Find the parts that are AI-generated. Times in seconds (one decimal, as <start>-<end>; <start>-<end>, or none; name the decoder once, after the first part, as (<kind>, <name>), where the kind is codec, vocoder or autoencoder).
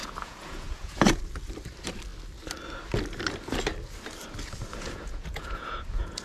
0.0-1.2 (vocoder, Vocos); 4.7-6.2